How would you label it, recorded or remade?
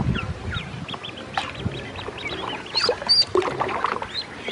recorded